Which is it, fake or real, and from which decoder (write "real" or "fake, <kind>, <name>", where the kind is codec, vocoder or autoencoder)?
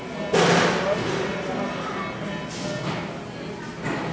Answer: real